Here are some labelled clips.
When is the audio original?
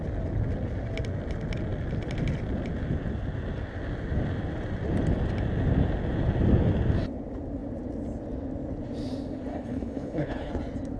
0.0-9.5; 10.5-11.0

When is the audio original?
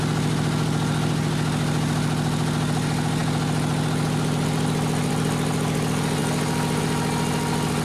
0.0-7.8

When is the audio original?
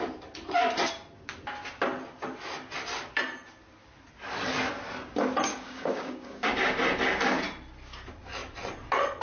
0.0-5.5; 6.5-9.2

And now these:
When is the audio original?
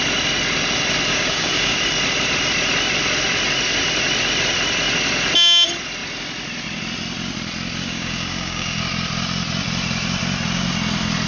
0.0-1.1; 1.8-7.8; 8.8-11.3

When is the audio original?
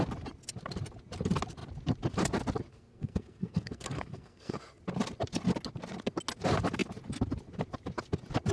0.0-2.7; 4.8-8.5